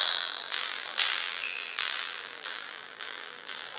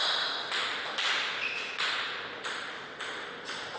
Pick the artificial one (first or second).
first